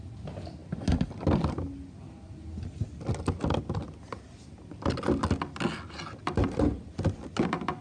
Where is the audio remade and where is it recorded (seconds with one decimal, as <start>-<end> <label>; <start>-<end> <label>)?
0.0-7.8 recorded

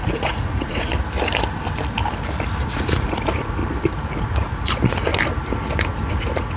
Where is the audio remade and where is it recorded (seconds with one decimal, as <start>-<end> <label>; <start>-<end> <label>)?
0.0-0.9 remade; 0.9-2.6 recorded; 2.6-3.6 remade; 3.6-4.2 recorded; 4.2-5.1 remade; 5.1-6.1 recorded; 6.1-6.6 remade

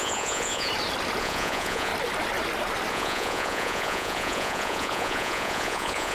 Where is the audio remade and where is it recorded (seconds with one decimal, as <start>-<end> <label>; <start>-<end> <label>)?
0.0-0.7 remade; 0.7-1.2 recorded; 1.2-1.9 remade; 1.9-2.9 recorded; 2.9-6.1 remade

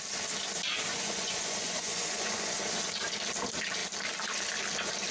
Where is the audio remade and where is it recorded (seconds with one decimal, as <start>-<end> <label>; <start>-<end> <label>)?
0.0-0.9 recorded; 0.9-2.6 remade; 2.6-5.1 recorded